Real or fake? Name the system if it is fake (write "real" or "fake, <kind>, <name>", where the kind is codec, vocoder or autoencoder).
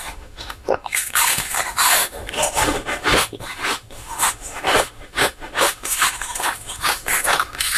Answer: fake, autoencoder, DAC-VAE